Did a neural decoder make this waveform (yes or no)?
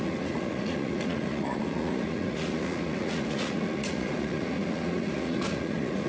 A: yes